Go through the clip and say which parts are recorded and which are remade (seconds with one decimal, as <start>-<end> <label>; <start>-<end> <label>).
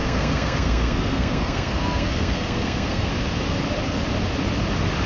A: 0.0-3.1 remade; 3.1-5.1 recorded